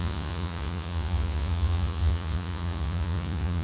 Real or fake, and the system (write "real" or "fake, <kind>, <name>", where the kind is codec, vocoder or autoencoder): fake, vocoder, Vocos